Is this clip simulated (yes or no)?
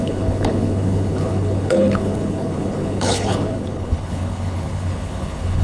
yes